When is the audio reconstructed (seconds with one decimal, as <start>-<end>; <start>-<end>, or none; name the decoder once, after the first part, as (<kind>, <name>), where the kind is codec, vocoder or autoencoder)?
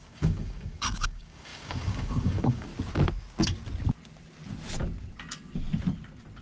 0.0-2.7 (codec, DAC)